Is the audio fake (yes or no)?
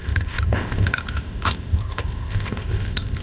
yes